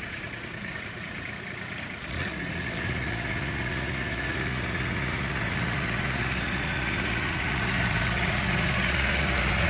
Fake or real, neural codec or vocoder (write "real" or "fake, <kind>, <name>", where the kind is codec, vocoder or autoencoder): fake, vocoder, Vocos